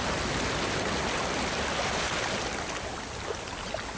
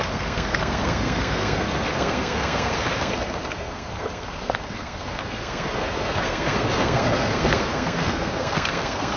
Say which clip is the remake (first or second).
second